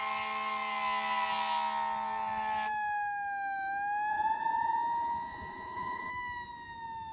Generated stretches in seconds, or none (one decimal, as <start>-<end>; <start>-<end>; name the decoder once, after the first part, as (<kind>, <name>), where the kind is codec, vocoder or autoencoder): 4.1-6.1 (vocoder, Vocos)